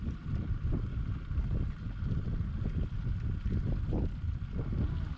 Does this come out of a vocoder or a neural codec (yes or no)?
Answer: no